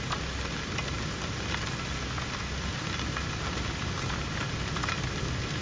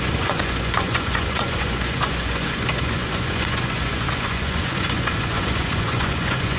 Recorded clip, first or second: first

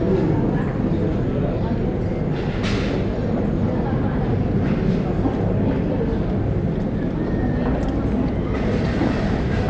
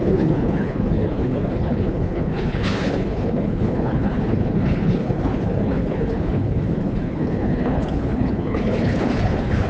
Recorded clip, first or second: first